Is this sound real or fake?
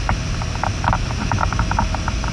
real